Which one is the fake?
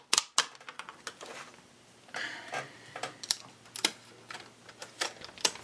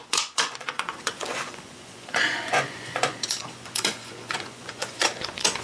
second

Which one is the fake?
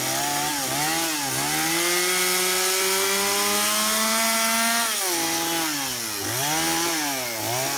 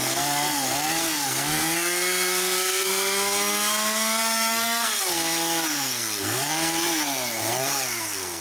second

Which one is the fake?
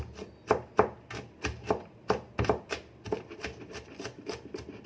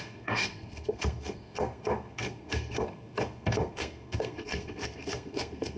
second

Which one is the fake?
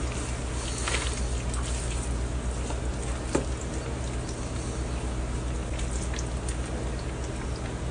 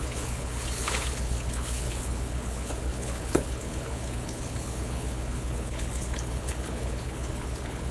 second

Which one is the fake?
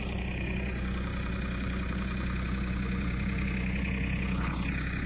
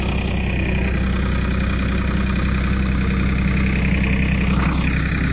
first